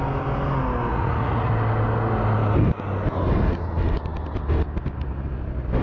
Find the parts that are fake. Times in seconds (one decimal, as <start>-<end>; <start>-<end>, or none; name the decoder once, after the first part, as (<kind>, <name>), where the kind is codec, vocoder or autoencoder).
0.9-1.5 (vocoder, Vocos)